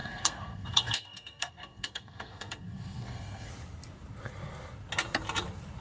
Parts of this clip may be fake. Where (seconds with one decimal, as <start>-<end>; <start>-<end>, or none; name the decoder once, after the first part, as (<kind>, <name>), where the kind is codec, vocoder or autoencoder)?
0.0-3.5 (codec, SNAC)